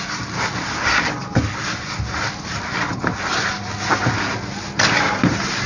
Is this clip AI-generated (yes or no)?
no